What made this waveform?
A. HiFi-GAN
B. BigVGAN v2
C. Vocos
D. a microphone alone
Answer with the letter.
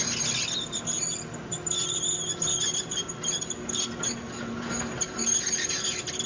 D